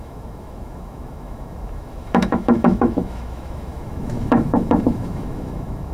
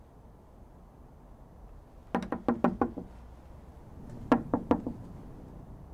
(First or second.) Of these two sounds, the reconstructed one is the first